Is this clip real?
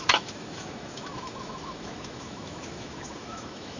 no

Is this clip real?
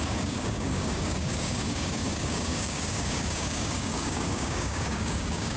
no